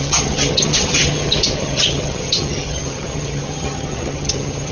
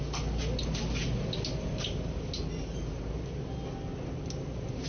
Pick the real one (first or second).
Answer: second